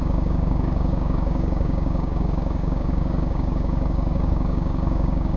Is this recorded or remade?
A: remade